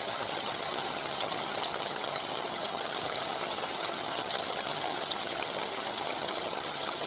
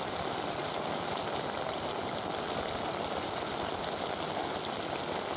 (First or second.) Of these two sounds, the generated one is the first